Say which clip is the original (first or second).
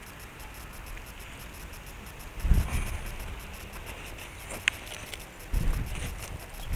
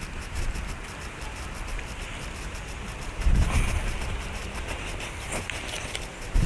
first